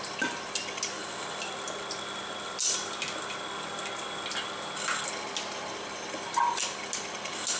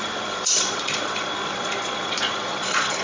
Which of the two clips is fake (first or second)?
second